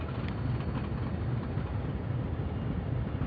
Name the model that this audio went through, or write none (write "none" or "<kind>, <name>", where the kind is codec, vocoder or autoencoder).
none